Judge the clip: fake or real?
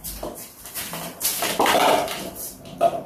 real